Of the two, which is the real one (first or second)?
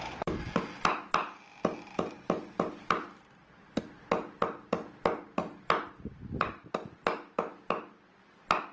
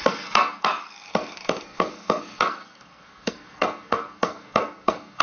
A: first